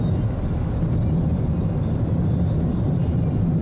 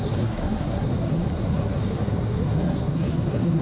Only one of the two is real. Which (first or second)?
first